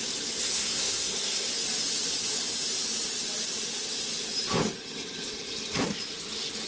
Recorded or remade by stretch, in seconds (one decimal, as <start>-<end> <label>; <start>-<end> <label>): 0.0-0.4 recorded; 0.4-1.5 remade; 1.5-6.7 recorded